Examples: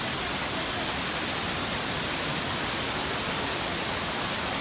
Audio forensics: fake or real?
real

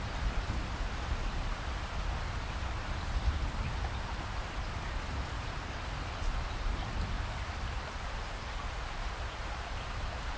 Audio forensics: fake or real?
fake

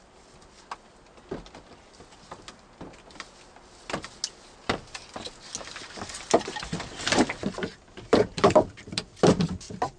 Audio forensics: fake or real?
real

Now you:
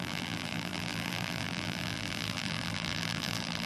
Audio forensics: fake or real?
fake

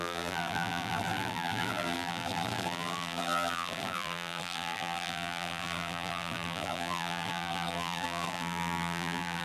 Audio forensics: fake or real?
fake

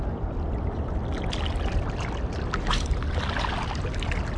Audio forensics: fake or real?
real